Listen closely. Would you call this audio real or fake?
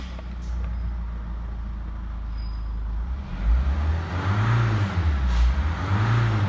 real